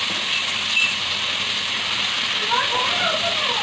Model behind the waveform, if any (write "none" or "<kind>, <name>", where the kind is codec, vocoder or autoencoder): none